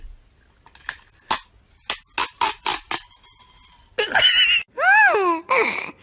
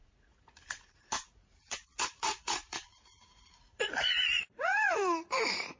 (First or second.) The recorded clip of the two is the first